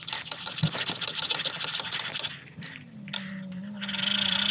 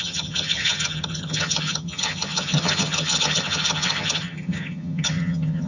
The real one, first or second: first